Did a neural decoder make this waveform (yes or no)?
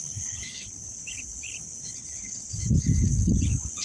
yes